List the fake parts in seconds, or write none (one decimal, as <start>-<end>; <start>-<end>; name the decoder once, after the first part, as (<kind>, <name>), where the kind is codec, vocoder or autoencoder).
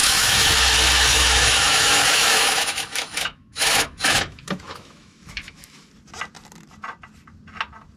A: 0.0-0.5 (autoencoder, DAC-VAE); 1.1-5.9